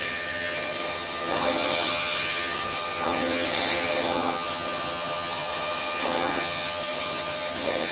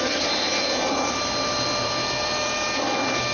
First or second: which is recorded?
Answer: second